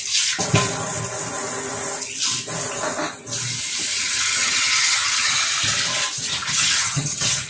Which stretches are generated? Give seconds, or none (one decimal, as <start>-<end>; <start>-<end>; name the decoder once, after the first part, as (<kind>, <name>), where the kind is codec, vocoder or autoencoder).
3.9-5.3 (vocoder, HiFi-GAN); 6.3-7.5